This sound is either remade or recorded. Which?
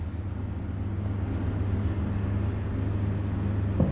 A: recorded